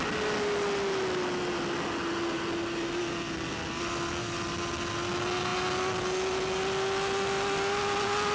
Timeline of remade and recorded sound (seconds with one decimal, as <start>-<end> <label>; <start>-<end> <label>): 0.0-8.3 recorded